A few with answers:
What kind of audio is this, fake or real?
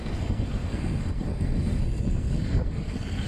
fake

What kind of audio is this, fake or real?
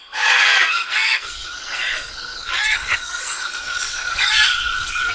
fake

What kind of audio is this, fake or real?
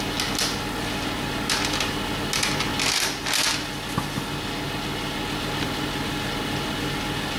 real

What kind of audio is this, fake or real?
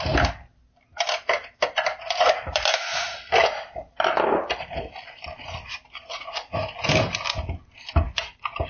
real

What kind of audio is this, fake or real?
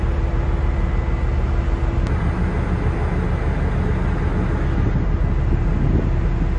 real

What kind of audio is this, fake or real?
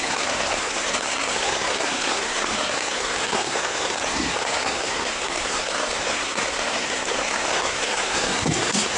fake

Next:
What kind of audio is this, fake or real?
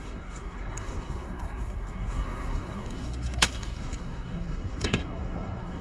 fake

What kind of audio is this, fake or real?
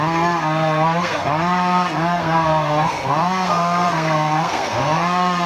fake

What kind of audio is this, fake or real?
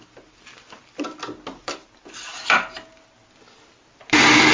real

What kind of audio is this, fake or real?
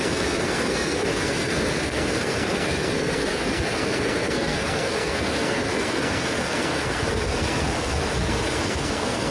fake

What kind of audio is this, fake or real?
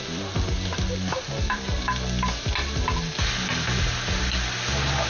real